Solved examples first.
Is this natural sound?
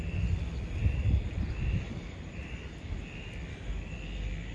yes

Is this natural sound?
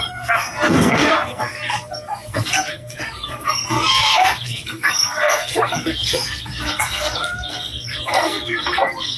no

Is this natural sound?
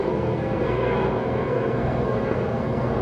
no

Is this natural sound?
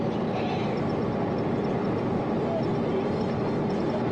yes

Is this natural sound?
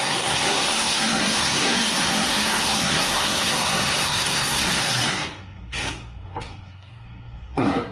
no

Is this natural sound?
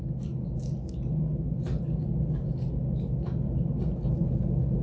yes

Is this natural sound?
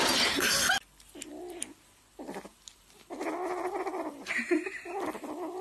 yes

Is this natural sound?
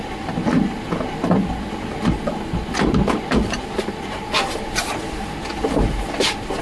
yes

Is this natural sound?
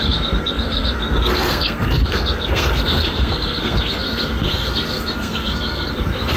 no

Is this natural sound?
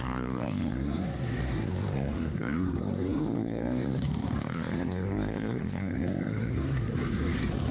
no